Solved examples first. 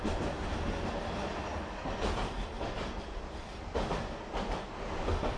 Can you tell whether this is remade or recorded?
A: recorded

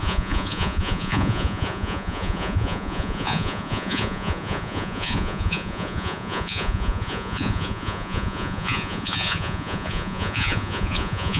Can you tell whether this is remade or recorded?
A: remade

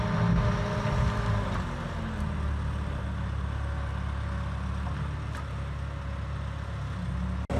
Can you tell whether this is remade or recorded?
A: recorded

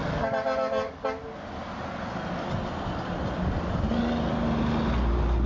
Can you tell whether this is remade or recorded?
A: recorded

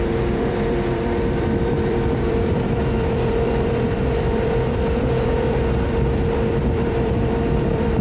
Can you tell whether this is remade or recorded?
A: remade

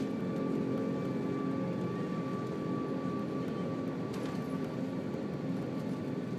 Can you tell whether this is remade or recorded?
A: recorded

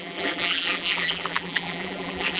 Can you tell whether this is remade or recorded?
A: remade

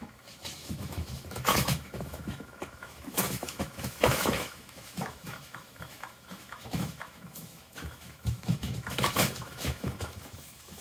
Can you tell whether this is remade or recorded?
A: remade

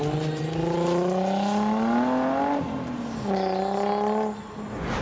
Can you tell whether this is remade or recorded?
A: recorded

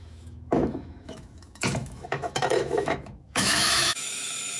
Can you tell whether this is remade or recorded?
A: remade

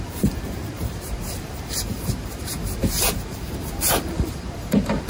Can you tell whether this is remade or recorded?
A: remade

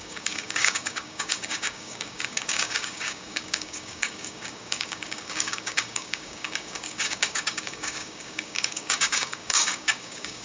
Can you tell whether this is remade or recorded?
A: remade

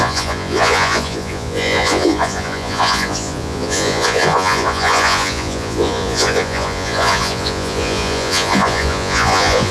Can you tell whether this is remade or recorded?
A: remade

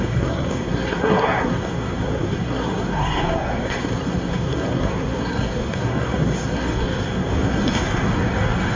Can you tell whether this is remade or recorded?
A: remade